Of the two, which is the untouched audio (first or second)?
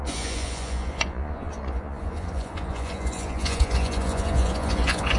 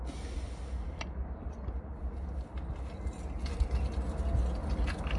second